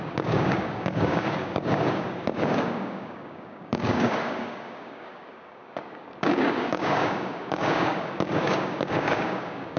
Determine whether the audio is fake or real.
fake